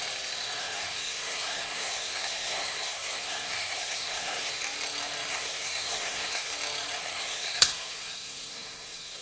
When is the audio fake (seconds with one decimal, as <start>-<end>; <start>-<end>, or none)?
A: 0.6-4.5; 5.3-6.5; 7.0-9.2